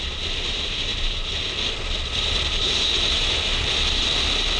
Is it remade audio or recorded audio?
recorded